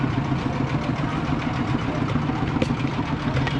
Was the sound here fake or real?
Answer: real